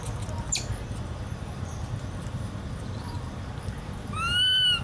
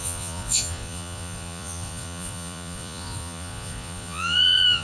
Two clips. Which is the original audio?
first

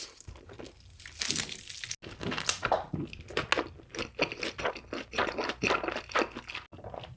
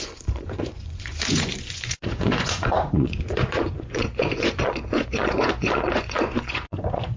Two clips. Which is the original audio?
first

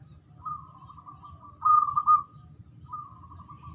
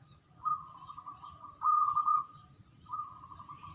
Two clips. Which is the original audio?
first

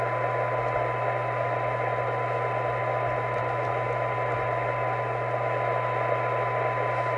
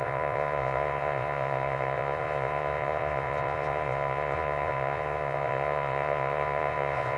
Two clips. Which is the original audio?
first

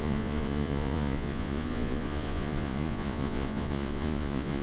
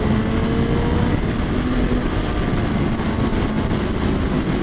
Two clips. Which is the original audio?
second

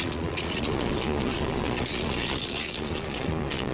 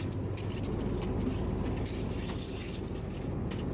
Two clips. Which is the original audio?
second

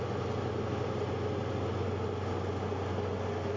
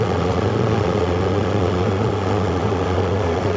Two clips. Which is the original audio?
first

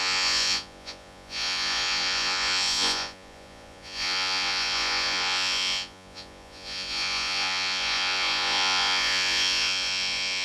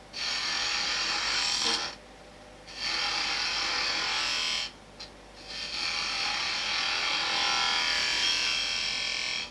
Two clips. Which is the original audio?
second